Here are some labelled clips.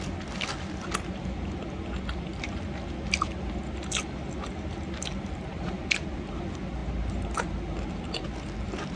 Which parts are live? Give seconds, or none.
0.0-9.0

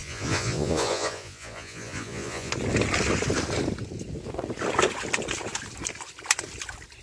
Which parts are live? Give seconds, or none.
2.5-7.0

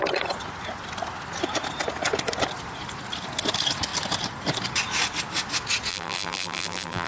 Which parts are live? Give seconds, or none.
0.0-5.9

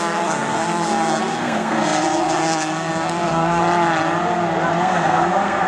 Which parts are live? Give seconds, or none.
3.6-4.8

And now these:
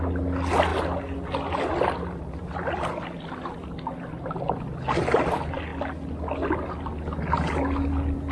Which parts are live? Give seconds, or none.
0.0-8.3

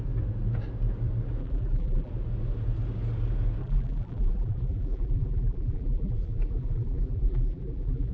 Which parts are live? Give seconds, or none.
0.0-1.4; 2.1-3.6

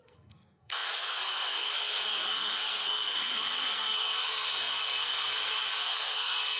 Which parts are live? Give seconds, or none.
none